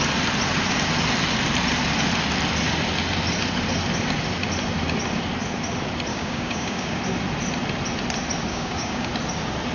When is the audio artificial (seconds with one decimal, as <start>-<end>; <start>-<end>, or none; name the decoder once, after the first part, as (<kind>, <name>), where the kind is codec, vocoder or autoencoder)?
6.1-7.0 (codec, DAC); 8.5-9.1